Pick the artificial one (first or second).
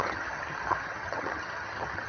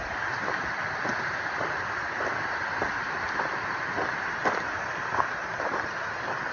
first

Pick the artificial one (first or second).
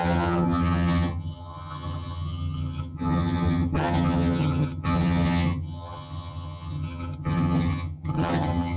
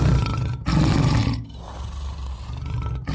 first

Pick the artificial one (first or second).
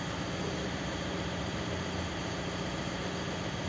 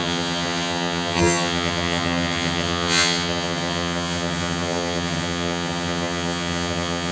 second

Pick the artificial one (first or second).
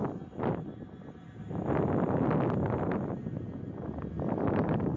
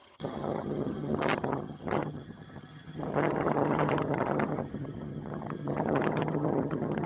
second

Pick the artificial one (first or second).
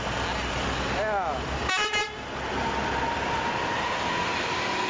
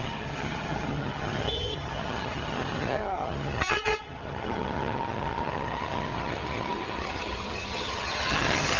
second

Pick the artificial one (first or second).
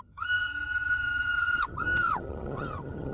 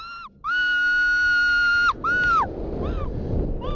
first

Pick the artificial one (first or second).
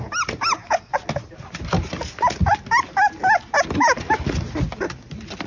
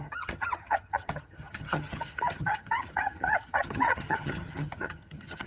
second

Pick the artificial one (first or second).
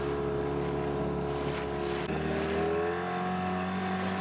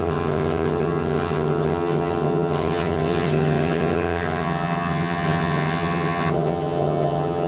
second